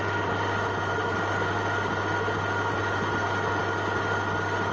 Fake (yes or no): no